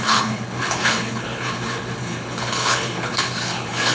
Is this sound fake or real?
fake